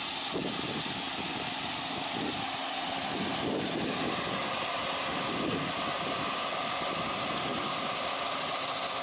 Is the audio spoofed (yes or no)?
no